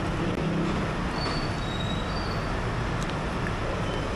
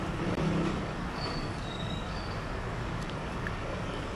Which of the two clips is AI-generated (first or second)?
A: second